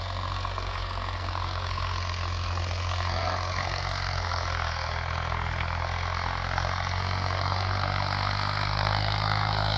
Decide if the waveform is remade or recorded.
remade